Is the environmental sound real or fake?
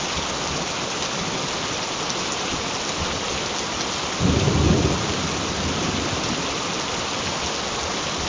real